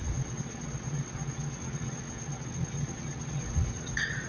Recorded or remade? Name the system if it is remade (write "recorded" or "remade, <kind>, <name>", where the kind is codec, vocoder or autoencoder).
remade, vocoder, WaveNeXt